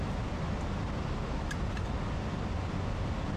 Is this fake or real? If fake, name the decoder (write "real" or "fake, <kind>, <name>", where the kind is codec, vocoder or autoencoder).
real